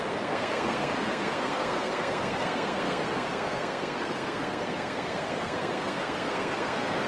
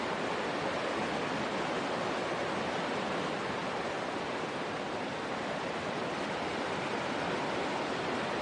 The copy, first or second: first